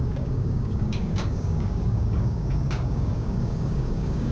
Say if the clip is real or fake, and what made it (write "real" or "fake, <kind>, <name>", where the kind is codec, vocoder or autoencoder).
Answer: fake, codec, DAC